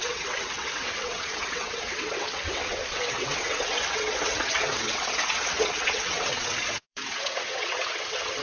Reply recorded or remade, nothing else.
remade